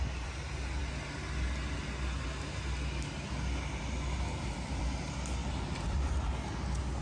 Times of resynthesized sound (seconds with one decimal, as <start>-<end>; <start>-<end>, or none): none